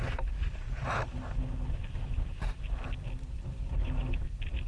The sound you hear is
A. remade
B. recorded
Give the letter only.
B